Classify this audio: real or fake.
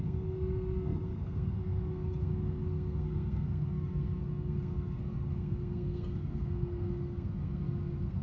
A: fake